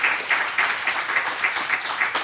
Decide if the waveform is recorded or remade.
recorded